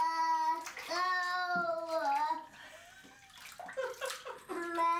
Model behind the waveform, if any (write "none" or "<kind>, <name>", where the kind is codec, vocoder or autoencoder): none